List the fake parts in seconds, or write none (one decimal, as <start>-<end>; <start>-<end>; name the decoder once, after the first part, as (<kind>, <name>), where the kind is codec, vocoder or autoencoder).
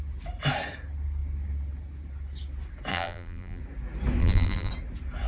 2.9-3.6 (vocoder, BigVGAN v2); 4.2-4.7